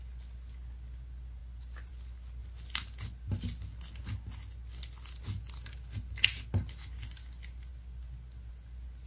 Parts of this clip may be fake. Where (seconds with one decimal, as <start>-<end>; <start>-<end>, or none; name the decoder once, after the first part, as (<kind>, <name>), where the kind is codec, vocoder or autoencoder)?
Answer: none